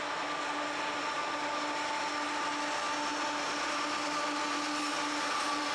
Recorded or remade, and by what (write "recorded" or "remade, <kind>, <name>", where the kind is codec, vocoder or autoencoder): recorded